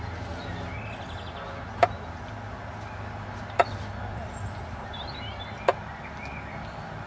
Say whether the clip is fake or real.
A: real